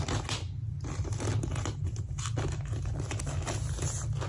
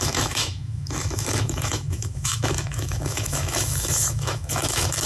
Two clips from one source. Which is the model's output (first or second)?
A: second